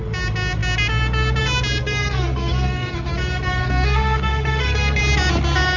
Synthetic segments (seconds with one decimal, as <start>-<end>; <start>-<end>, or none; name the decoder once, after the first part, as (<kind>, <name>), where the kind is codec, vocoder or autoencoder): 1.8-3.1 (codec, SNAC); 3.6-5.0